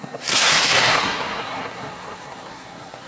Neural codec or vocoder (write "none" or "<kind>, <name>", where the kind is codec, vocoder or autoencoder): codec, SNAC